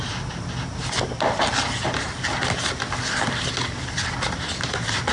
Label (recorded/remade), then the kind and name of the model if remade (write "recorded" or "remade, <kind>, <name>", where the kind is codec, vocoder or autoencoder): recorded